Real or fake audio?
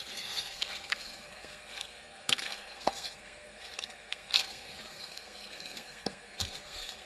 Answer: fake